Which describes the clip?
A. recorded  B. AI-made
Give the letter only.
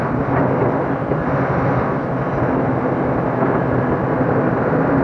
A